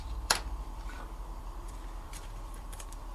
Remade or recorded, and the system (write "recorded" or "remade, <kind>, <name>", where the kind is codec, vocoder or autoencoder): remade, vocoder, BigVGAN v2